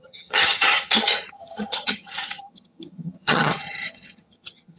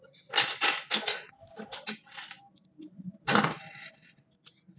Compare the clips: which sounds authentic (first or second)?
second